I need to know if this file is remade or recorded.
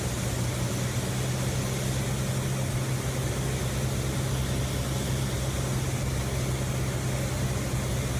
recorded